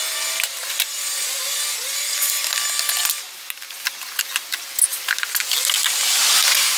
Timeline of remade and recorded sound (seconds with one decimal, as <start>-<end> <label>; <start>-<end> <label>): 0.0-6.8 recorded